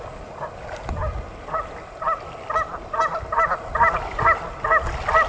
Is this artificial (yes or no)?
no